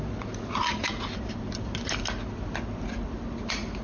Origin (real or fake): real